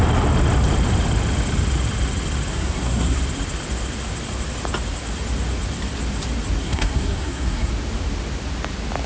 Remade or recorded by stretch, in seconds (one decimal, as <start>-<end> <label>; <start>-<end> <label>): 0.0-2.5 recorded; 2.5-3.2 remade; 3.2-6.6 recorded; 6.6-7.7 remade; 7.7-9.1 recorded